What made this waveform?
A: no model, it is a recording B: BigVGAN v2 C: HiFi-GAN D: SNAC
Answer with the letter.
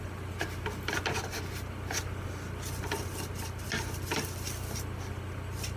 A